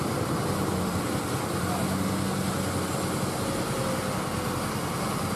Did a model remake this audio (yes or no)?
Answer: no